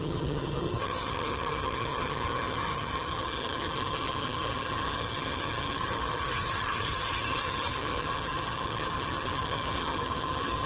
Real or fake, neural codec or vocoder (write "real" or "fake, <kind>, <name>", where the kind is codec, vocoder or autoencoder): fake, vocoder, HiFi-GAN